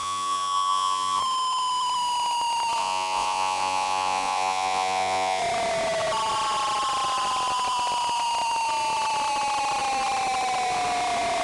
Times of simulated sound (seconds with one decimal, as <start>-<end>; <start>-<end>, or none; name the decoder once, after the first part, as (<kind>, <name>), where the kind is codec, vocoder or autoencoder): 0.0-1.2 (vocoder, Vocos); 2.8-5.4